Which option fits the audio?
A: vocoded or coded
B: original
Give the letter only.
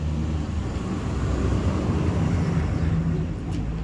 B